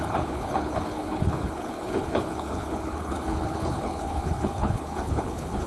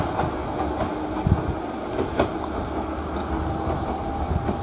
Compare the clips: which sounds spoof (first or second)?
first